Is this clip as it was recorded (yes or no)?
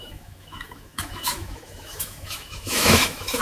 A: no